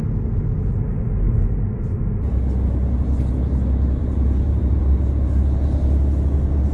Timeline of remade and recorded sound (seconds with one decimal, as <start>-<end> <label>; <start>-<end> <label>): 0.0-4.0 recorded; 4.0-4.8 remade; 4.8-6.7 recorded